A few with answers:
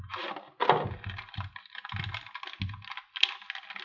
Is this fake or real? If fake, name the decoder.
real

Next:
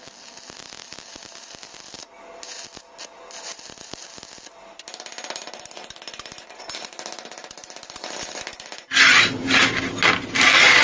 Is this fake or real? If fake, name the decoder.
real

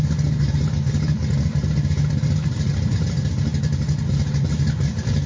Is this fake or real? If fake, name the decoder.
real